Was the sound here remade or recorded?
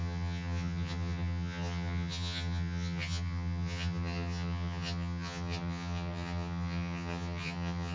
remade